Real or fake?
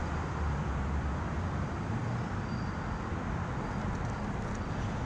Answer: real